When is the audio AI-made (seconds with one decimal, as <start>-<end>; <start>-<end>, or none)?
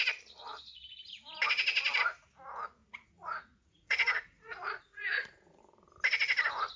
2.8-5.6